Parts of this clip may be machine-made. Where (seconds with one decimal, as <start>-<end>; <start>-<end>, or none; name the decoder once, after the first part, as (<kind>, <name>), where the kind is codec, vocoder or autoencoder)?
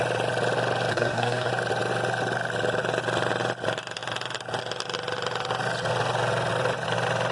0.9-1.5 (codec, SNAC)